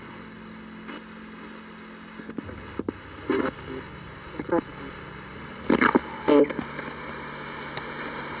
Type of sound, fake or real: real